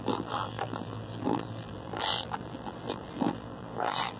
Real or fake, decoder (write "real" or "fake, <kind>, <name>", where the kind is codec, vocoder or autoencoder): fake, vocoder, BigVGAN v2